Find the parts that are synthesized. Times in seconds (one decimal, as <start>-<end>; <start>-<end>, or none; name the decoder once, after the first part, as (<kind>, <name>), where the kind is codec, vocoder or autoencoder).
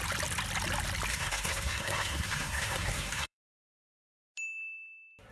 1.1-4.3 (codec, SNAC)